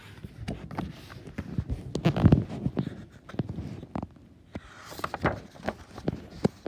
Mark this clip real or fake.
real